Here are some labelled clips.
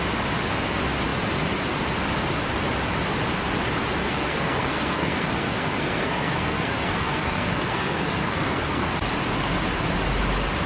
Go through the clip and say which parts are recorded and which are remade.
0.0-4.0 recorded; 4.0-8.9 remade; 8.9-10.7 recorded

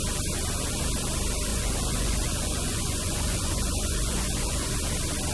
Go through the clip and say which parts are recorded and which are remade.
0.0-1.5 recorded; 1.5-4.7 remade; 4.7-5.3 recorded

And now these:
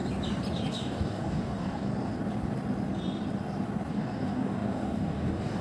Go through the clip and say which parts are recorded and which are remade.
0.0-0.7 recorded; 0.7-1.9 remade; 1.9-3.9 recorded; 3.9-5.6 remade